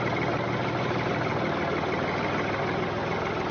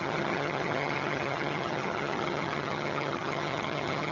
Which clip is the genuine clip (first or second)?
first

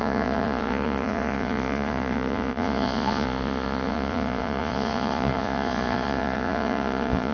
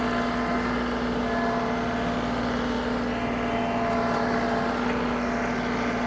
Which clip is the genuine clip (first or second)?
second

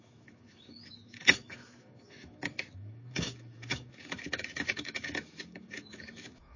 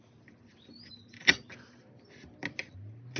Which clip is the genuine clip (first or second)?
second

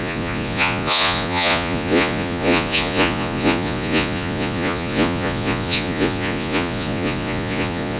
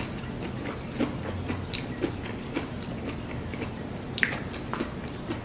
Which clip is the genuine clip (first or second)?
second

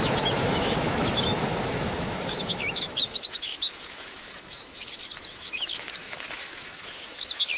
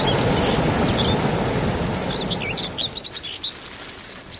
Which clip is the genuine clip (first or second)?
second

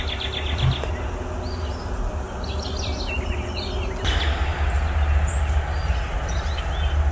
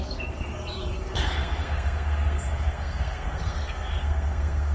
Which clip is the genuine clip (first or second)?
first